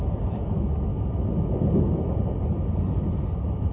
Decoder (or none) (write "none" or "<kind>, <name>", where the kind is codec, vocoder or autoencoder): none